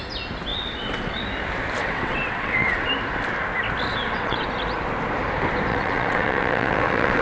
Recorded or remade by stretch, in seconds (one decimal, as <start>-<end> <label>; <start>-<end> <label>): 0.0-0.5 recorded; 0.5-1.2 remade; 1.2-1.8 recorded; 1.8-2.9 remade; 2.9-3.9 recorded; 3.9-4.4 remade; 4.4-5.7 recorded; 5.7-7.2 remade